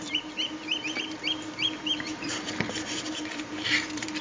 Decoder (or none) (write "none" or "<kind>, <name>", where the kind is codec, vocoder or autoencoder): vocoder, BigVGAN v2